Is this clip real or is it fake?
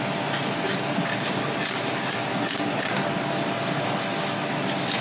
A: real